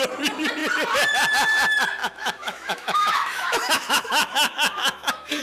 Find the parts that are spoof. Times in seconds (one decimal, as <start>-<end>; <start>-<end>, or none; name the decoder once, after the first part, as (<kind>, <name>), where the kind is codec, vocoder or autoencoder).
2.0-5.4 (autoencoder, DAC-VAE)